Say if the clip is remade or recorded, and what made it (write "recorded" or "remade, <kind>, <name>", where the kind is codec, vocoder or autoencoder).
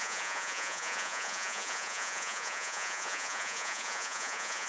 remade, vocoder, Vocos